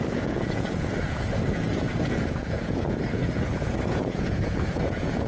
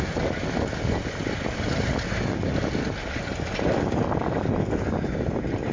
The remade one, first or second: first